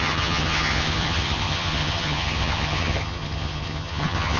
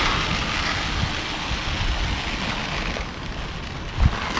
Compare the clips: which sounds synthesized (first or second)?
first